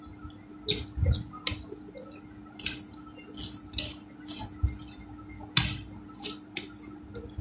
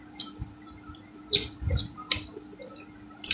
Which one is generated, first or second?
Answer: second